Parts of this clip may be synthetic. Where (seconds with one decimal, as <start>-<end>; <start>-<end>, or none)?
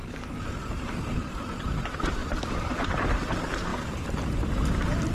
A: 0.7-1.2; 1.7-2.2; 2.8-3.7